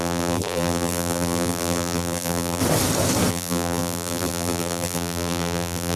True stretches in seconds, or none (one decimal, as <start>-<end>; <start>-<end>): 2.6-3.3